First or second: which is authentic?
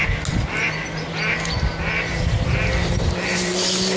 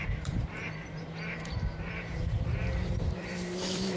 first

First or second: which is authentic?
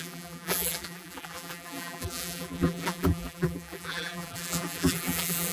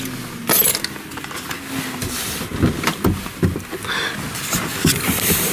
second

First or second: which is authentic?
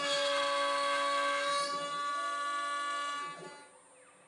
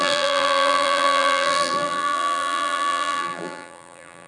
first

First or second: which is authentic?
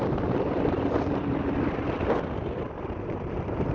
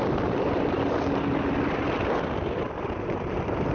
second